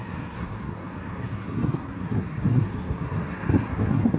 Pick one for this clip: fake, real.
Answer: fake